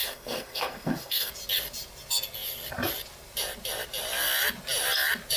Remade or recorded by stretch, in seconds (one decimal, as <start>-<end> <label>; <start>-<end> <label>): 0.0-1.3 remade; 1.3-5.4 recorded